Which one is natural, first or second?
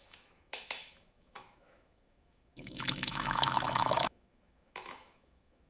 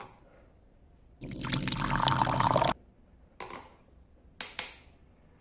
second